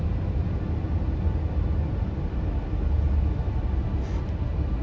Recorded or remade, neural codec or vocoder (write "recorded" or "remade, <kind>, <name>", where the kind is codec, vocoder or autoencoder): recorded